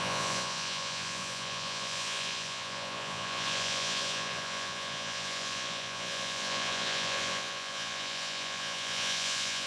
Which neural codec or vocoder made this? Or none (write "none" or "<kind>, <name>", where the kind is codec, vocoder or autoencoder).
vocoder, Vocos